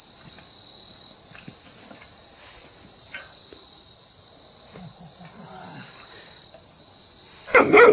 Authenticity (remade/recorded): recorded